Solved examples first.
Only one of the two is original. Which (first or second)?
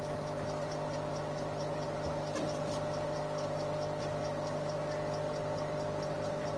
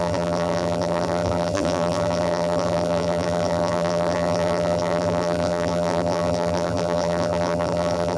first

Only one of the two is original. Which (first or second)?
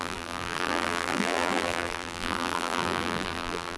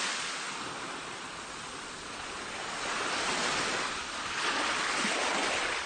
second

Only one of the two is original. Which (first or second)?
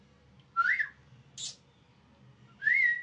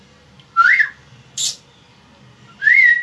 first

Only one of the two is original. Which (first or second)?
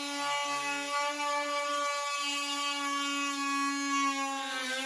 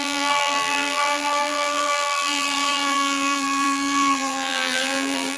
first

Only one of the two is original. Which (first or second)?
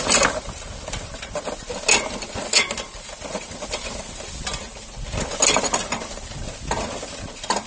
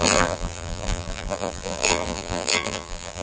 first